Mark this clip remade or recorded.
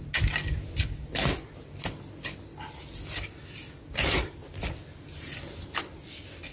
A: recorded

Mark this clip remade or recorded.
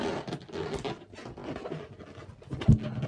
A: recorded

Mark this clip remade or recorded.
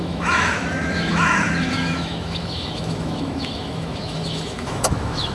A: remade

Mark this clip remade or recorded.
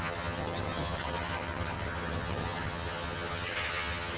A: remade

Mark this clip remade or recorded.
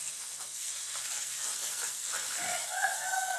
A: remade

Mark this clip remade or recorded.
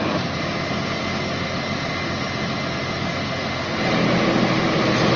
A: recorded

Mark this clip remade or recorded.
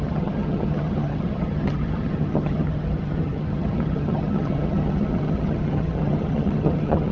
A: remade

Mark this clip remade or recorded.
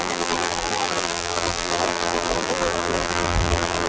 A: remade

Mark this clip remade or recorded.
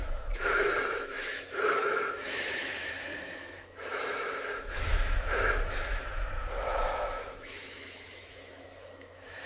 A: remade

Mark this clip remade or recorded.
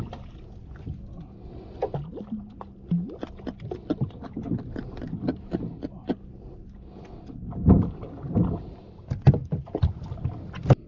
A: recorded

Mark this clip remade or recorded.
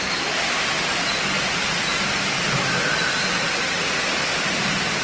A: recorded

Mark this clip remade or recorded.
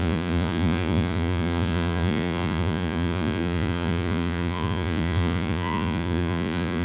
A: remade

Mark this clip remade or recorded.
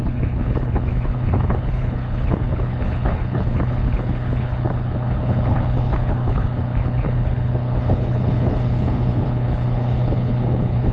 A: remade